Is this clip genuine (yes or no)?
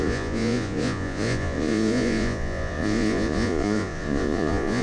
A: no